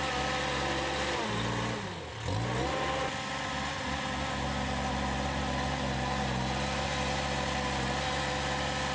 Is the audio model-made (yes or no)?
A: no